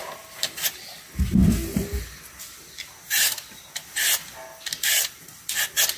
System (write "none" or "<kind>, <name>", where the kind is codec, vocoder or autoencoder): none